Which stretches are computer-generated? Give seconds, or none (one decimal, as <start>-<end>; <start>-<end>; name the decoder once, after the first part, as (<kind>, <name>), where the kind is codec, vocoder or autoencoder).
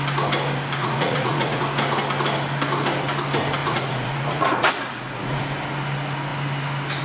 0.8-1.6 (vocoder, Vocos); 3.6-5.4